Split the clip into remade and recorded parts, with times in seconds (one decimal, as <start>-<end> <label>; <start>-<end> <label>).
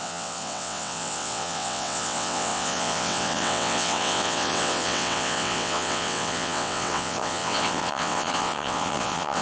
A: 0.0-9.4 remade